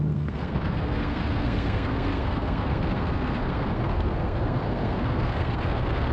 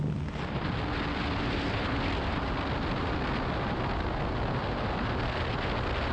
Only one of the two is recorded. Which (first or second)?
second